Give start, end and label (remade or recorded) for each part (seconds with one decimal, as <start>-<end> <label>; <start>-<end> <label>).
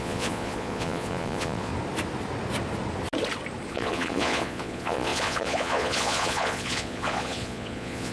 0.0-1.7 remade; 1.7-3.7 recorded; 3.7-8.1 remade